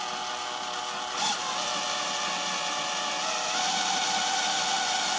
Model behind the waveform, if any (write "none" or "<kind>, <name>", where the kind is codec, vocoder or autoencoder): none